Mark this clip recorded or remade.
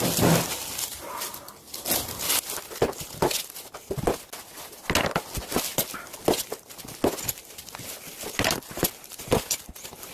recorded